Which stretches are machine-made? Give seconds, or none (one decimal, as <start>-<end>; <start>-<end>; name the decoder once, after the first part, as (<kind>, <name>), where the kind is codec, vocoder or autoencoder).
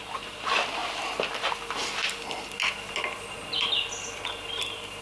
none